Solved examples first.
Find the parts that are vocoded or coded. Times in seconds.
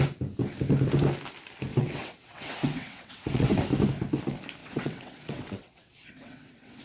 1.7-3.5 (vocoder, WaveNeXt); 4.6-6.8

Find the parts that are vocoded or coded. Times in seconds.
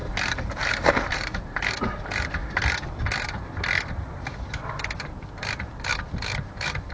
0.0-2.4 (vocoder, BigVGAN v2); 6.5-6.9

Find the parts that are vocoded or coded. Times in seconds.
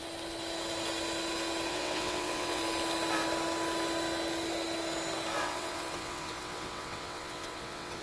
1.7-2.6 (vocoder, WaveNeXt); 5.4-8.0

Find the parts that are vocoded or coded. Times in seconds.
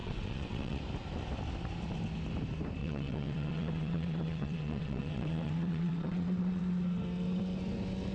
0.0-0.8 (vocoder, WaveNeXt); 2.8-6.6